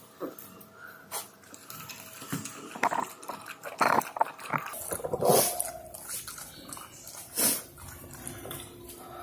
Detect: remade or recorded recorded